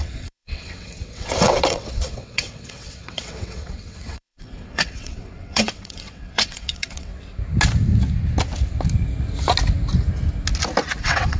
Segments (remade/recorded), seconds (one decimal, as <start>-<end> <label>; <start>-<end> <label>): 0.0-7.1 remade; 7.1-11.0 recorded; 11.0-11.4 remade